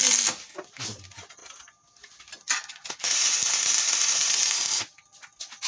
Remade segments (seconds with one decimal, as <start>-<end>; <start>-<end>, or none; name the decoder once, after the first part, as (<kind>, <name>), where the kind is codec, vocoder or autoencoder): none